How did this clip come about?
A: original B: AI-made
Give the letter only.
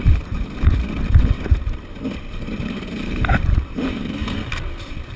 B